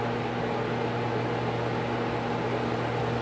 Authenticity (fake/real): real